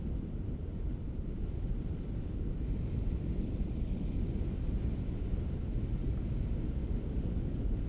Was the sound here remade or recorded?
recorded